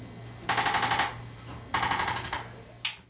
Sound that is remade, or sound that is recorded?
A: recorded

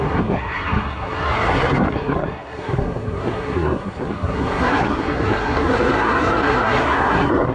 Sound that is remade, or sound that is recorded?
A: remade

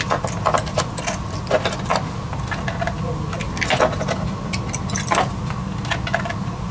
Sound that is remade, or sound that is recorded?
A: recorded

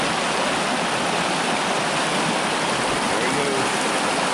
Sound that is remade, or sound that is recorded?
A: recorded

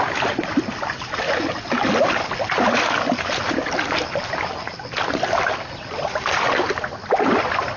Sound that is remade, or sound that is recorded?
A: recorded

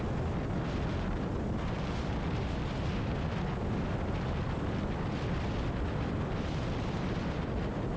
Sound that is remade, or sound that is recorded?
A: remade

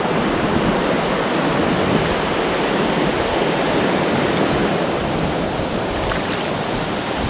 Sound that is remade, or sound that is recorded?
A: recorded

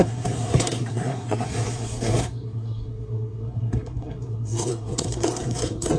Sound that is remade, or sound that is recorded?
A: remade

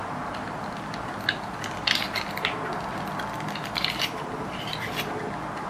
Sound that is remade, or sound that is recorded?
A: recorded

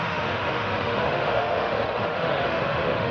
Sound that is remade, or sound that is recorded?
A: remade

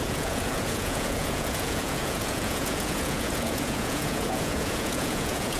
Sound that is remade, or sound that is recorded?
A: remade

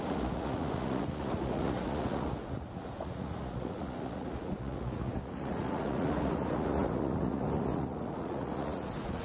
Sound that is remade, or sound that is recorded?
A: remade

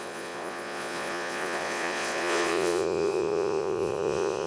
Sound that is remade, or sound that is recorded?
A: remade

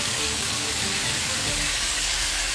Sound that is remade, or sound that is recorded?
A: remade